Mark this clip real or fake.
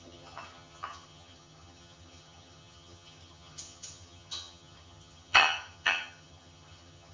fake